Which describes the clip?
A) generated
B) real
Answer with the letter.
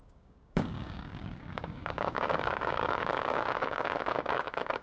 A